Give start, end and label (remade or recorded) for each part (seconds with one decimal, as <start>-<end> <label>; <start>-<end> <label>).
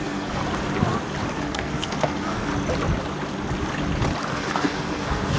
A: 0.0-0.4 remade; 0.4-1.3 recorded; 1.3-2.5 remade; 2.5-4.3 recorded; 4.3-5.4 remade